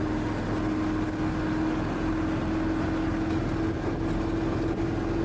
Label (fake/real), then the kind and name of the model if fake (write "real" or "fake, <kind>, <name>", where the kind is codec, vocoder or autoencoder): real